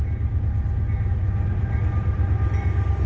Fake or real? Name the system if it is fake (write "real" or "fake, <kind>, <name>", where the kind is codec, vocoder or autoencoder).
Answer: real